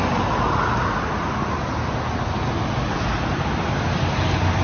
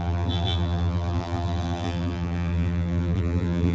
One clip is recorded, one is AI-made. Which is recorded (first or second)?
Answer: first